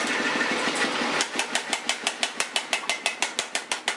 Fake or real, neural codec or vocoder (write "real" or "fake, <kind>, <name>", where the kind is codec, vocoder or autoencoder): real